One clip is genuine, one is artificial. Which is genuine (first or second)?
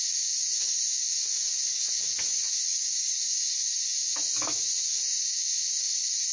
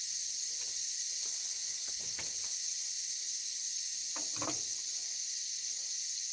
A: second